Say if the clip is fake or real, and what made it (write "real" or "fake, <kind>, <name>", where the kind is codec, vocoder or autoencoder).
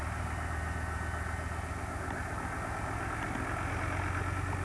real